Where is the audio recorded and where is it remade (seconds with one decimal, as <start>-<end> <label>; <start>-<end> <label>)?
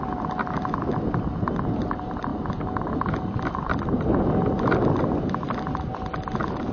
0.0-6.7 recorded